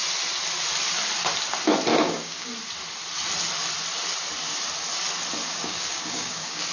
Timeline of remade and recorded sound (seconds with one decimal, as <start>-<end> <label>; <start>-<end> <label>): 0.0-1.9 recorded; 1.9-2.5 remade; 2.5-5.4 recorded; 5.4-6.7 remade